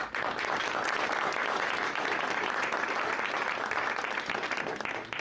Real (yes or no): yes